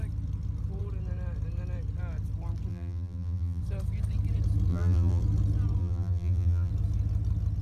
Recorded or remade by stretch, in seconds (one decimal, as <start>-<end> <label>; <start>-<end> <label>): 0.0-2.7 recorded; 2.7-3.6 remade; 3.6-4.7 recorded; 4.7-5.2 remade; 5.2-5.8 recorded; 5.8-6.7 remade; 6.7-7.6 recorded